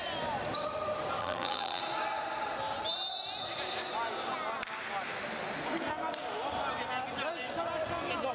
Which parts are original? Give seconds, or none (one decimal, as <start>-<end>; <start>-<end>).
0.0-1.2; 1.8-8.3